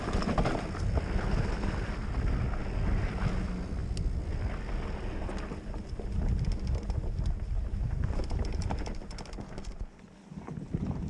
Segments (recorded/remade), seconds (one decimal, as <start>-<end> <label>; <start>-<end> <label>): 0.0-11.1 recorded